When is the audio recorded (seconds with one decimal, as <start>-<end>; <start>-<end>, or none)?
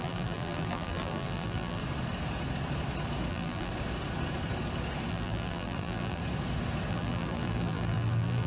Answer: 1.8-3.3; 3.7-5.1; 6.2-6.9